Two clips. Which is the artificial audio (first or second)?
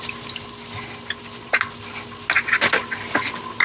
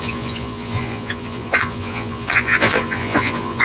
second